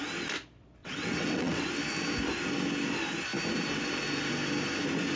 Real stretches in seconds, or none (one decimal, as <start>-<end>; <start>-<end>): 0.0-0.8; 1.7-5.2